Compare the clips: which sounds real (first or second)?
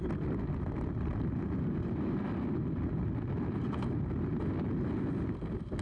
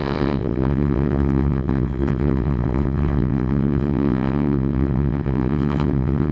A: first